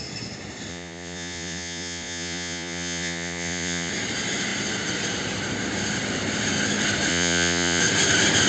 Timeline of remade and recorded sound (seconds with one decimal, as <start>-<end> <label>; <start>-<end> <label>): 0.0-0.7 recorded; 0.7-3.9 remade; 3.9-7.1 recorded; 7.1-7.8 remade; 7.8-8.5 recorded